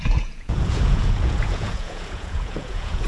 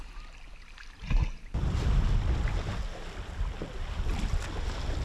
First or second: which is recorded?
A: second